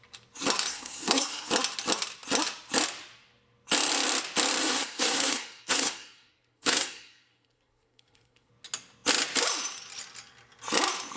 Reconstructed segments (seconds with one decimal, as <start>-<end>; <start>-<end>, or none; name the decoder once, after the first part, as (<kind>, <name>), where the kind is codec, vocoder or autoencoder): 0.7-1.5 (codec, SNAC); 4.6-8.5

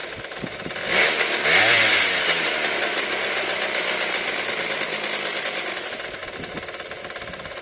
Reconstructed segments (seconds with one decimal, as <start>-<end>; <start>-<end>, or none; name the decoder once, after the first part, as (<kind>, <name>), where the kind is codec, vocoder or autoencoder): 0.0-4.3 (vocoder, BigVGAN v2)

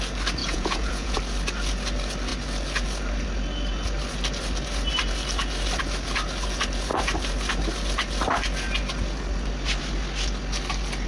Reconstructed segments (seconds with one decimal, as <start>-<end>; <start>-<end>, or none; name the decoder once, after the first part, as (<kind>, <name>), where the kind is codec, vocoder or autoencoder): 0.4-1.2 (vocoder, Vocos)

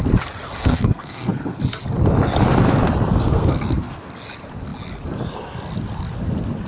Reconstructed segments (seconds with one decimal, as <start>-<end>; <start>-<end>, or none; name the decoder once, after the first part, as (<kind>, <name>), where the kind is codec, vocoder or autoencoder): 0.6-1.6 (codec, SNAC); 3.2-4.0

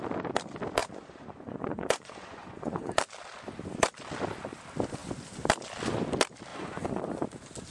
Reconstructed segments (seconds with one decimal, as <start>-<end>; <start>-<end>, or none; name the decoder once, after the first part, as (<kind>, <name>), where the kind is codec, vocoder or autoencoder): 0.8-2.9 (vocoder, Vocos); 6.5-7.0

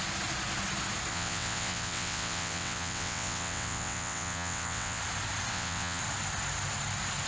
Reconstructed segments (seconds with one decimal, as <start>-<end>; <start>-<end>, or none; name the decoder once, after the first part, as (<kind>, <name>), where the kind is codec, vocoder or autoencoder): 1.1-5.0 (vocoder, WaveNeXt); 5.5-6.0

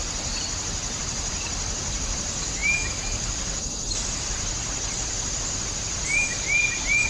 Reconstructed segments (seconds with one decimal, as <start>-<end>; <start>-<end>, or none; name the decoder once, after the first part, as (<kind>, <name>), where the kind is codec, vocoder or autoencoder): none